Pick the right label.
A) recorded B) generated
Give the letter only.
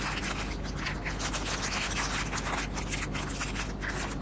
A